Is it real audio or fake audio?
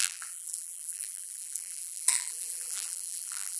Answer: fake